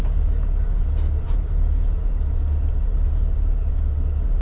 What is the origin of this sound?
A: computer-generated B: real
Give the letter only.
B